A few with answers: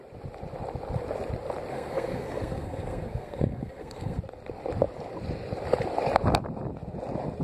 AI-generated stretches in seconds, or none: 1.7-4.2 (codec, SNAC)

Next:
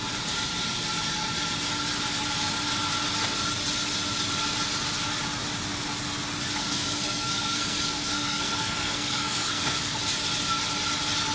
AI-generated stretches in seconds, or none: 6.6-10.0 (codec, SNAC)

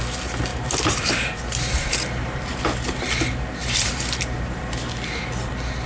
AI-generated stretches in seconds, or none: 0.5-2.6 (vocoder, BigVGAN v2); 3.6-4.7

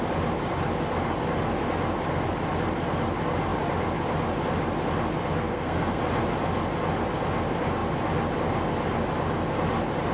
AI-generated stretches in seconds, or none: 5.5-6.0 (codec, SNAC)